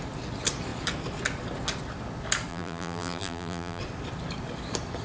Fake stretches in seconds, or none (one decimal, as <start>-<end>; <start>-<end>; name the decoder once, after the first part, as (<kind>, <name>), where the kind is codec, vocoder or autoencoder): 2.5-3.8 (vocoder, BigVGAN v2)